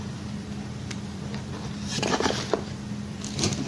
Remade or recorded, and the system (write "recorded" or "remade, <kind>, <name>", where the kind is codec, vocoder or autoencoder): recorded